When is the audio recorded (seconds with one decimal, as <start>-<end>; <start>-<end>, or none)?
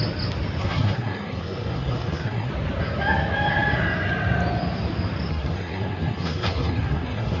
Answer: 0.0-0.6; 2.5-5.3